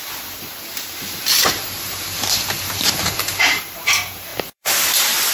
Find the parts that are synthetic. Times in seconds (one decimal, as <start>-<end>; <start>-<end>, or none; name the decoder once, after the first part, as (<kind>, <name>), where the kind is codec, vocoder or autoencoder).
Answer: 0.7-3.9 (vocoder, BigVGAN v2); 4.3-5.3